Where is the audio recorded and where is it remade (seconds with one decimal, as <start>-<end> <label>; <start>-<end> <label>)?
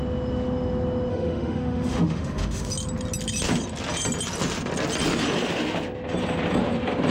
0.0-1.1 recorded; 1.1-2.7 remade; 2.7-7.1 recorded